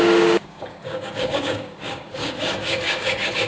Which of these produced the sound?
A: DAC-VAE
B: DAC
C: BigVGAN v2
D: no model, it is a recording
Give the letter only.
B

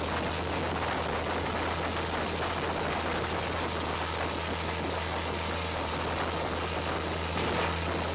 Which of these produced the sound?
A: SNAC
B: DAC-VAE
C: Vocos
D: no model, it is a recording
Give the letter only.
D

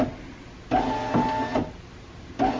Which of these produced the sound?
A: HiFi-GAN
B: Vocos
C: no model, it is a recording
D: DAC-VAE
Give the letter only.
C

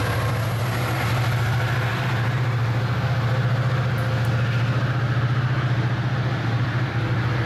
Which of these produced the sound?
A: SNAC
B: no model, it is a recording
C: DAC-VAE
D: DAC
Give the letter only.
B